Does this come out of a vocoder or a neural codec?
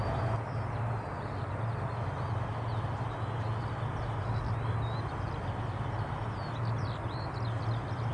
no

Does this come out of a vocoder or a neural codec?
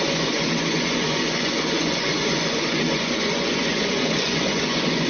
yes